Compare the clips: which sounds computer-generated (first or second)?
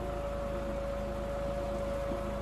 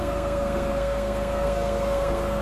second